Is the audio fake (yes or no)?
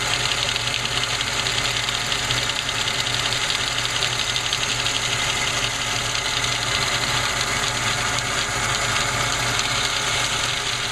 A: no